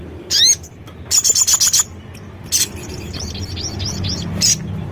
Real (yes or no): yes